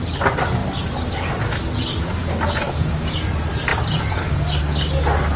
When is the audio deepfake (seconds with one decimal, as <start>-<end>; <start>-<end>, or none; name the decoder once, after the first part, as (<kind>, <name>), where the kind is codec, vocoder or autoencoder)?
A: none